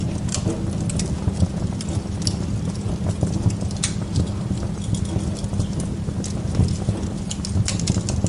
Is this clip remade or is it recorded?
recorded